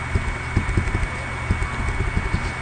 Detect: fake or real real